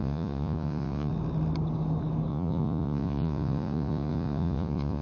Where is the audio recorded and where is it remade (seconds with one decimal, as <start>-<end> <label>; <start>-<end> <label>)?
0.0-1.1 remade; 1.1-2.3 recorded; 2.3-5.0 remade